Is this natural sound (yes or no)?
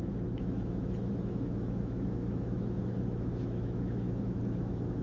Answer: no